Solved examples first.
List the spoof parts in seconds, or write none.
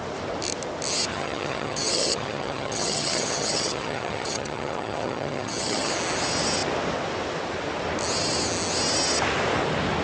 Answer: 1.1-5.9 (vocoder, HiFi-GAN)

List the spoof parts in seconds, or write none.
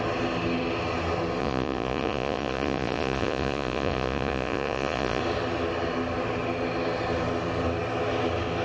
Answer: 1.4-5.2 (vocoder, Vocos)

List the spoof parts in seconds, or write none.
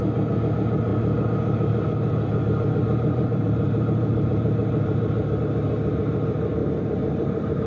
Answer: 0.9-5.4 (vocoder, BigVGAN v2); 6.6-7.7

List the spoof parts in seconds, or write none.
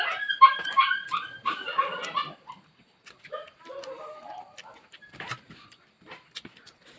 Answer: none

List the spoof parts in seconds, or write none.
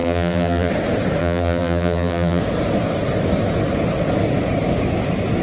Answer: 0.0-0.7 (vocoder, BigVGAN v2); 1.2-2.4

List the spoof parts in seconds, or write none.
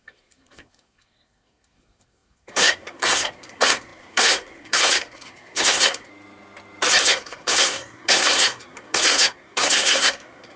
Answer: 0.0-6.1 (codec, SNAC); 7.0-10.6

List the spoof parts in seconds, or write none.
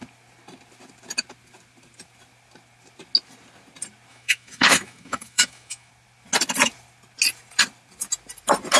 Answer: 4.1-5.9 (autoencoder, DAC-VAE)